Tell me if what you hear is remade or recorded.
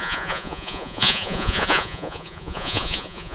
remade